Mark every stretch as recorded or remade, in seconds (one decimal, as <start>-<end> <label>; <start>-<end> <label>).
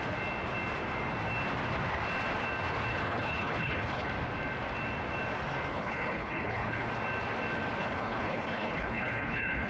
0.0-2.9 recorded; 2.9-4.1 remade; 4.1-5.7 recorded; 5.7-6.9 remade; 6.9-7.8 recorded; 7.8-9.7 remade